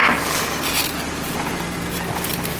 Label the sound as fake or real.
real